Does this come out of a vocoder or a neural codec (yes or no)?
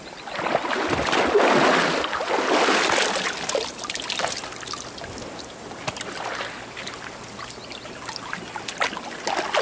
no